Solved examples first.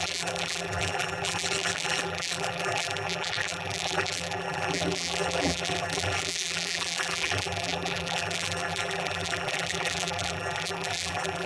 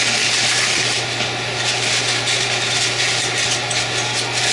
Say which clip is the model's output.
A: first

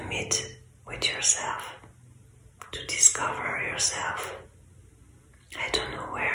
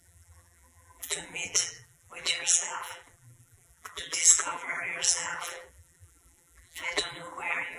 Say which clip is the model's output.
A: second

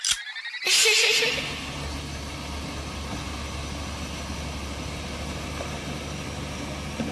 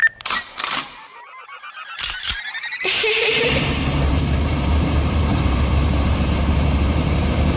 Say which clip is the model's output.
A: second